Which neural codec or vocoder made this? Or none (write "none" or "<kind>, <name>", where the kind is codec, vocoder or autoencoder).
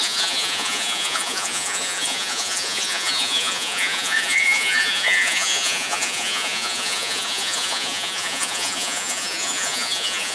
vocoder, Vocos